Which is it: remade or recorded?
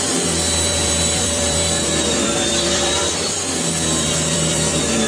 remade